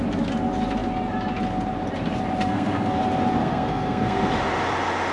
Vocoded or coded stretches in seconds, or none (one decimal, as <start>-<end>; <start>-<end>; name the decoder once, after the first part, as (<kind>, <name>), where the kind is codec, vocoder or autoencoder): 2.4-3.0 (codec, SNAC); 3.4-4.3